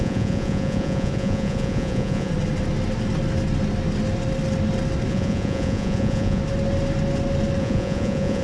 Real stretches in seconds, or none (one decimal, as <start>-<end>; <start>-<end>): 2.3-5.1; 6.4-7.6